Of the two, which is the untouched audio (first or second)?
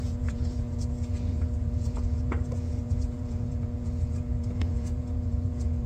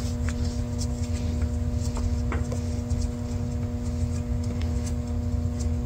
second